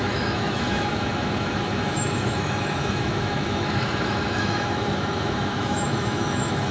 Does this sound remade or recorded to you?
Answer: remade